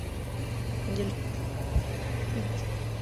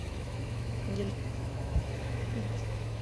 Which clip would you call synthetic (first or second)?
second